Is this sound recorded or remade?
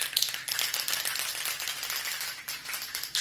recorded